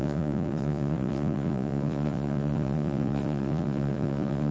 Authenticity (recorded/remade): remade